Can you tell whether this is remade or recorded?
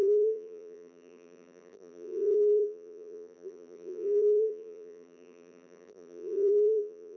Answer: remade